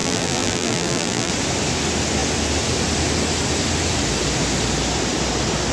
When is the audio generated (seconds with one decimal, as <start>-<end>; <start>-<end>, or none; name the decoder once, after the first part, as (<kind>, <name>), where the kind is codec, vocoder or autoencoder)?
0.0-1.3 (vocoder, BigVGAN v2)